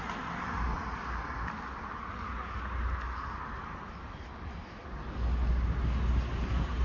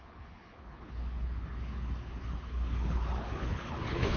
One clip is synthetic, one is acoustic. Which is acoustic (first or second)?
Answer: first